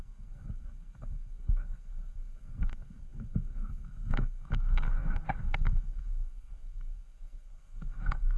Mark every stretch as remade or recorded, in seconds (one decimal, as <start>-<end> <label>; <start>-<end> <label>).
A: 0.0-8.4 remade